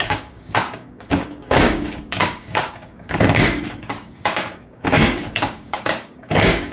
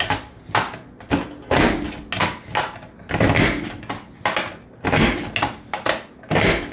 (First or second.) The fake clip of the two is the first